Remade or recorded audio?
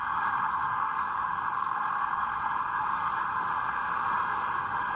remade